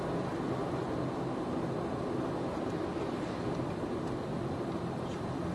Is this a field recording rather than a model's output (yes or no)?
yes